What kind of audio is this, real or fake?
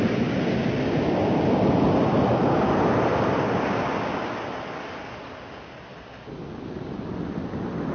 real